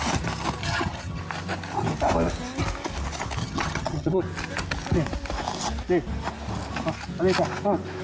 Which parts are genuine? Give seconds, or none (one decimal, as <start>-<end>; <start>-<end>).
0.0-0.6; 1.2-3.4; 4.2-8.0